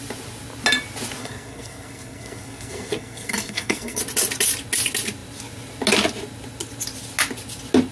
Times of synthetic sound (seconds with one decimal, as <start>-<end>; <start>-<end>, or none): 1.2-4.0